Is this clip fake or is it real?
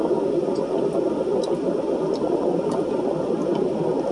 real